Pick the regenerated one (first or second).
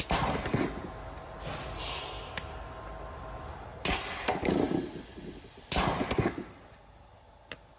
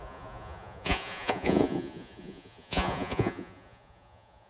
second